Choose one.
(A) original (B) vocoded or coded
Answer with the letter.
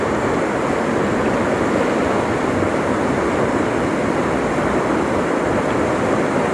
A